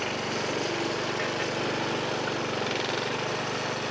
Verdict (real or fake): real